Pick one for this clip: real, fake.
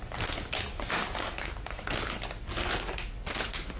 real